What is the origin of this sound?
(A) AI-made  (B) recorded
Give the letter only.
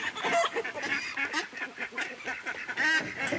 B